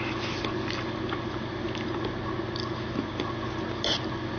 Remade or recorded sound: recorded